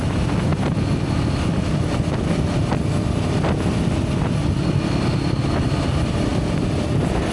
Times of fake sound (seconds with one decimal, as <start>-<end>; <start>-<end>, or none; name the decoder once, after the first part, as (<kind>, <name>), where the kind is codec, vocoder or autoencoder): none